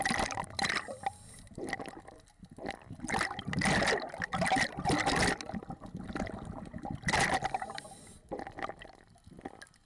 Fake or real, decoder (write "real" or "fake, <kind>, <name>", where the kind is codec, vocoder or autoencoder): real